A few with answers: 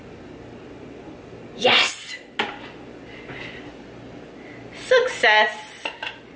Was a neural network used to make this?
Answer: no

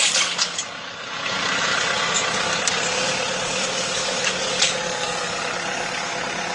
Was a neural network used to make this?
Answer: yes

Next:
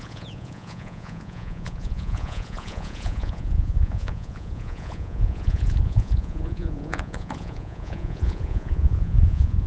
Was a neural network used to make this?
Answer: yes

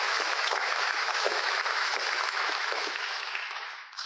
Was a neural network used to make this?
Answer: yes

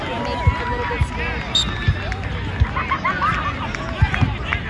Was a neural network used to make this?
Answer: no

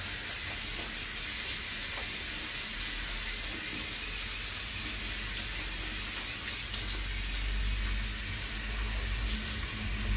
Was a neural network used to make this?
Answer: no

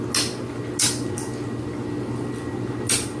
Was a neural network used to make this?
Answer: no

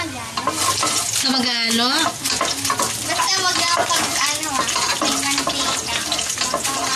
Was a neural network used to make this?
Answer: no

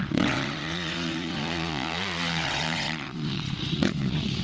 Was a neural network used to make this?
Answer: yes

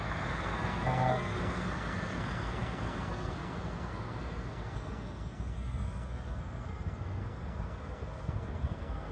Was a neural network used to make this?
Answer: yes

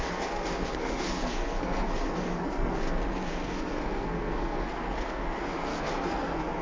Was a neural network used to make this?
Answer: yes